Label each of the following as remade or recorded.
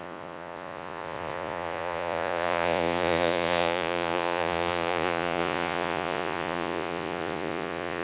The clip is remade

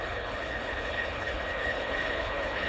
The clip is remade